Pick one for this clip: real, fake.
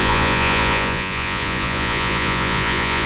fake